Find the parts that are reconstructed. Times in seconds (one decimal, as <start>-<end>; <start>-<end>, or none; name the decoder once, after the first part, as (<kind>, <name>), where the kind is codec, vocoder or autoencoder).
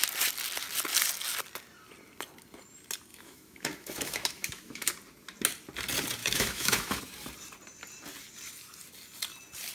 3.1-4.9 (autoencoder, DAC-VAE); 6.2-7.0